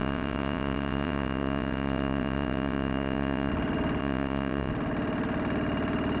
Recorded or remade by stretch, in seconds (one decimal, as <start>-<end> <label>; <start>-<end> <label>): 0.0-3.5 remade; 3.5-4.0 recorded; 4.0-4.7 remade; 4.7-6.2 recorded